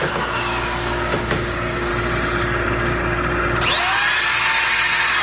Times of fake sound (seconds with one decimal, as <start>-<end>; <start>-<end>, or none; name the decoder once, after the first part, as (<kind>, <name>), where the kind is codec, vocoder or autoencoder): 0.0-1.9 (codec, DAC)